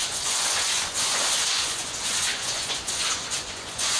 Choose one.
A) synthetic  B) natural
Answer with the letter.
A